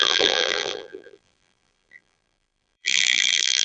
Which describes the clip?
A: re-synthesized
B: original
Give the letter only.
A